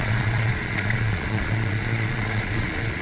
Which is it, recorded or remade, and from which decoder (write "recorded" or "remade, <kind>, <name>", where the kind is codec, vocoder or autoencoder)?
remade, vocoder, Vocos